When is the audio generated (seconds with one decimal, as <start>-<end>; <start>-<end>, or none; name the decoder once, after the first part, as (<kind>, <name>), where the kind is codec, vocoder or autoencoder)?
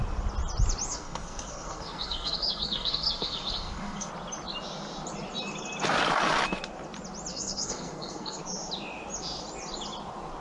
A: 0.9-4.1 (codec, SNAC); 7.3-8.4